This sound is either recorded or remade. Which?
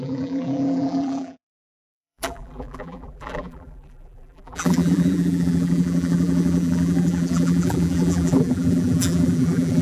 remade